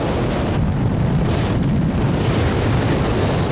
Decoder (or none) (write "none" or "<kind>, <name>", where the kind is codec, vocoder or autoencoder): none